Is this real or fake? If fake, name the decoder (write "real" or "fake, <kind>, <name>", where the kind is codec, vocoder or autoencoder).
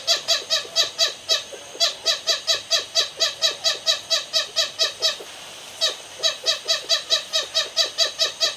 real